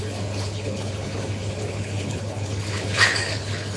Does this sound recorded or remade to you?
remade